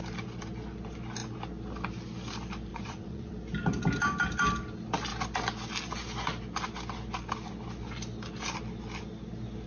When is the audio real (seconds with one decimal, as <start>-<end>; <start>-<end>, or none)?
0.0-2.7; 3.3-9.7